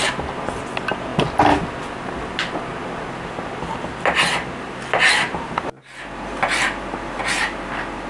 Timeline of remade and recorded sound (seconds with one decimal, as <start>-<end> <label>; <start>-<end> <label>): 0.0-8.1 recorded